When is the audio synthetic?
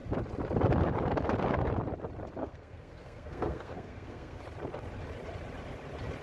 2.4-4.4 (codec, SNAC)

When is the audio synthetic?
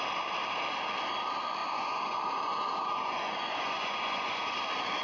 1.6-4.6 (vocoder, Vocos)